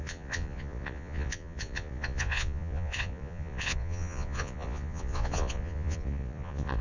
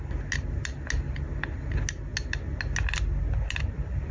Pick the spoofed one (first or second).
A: first